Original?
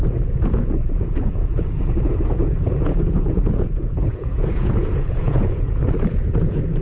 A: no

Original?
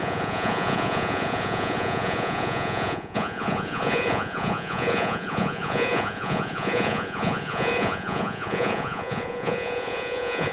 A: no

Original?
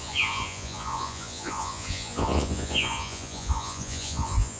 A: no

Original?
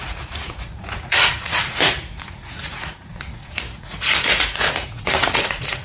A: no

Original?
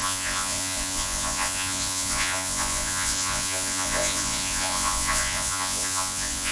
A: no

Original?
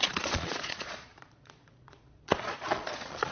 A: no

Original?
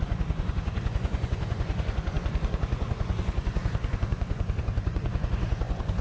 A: no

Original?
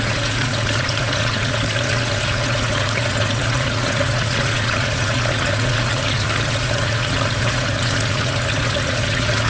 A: no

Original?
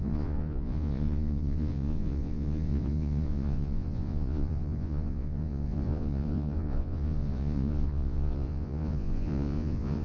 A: no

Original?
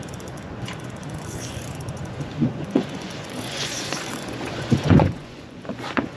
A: no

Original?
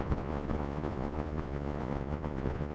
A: no